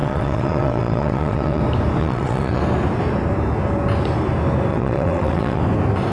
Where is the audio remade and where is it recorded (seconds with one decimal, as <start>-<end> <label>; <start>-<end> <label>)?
0.0-1.6 remade; 1.6-2.0 recorded; 2.0-2.6 remade; 2.6-4.7 recorded; 4.7-5.6 remade; 5.6-6.1 recorded